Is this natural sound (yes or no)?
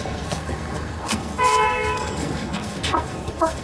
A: no